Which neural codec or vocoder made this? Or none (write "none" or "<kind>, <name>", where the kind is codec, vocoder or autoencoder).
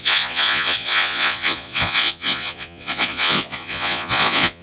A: vocoder, Vocos